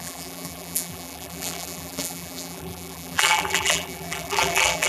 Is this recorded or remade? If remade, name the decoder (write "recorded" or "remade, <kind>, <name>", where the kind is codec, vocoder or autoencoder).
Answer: remade, vocoder, BigVGAN v2